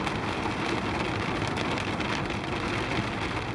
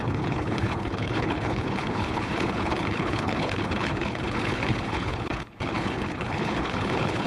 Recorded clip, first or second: first